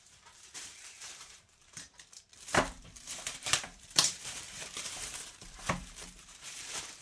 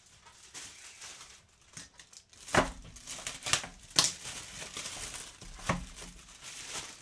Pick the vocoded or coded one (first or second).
first